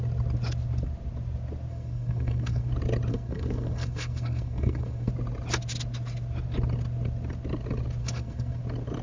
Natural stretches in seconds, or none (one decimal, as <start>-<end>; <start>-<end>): 0.0-1.7; 2.7-3.1; 5.1-8.0; 8.6-9.0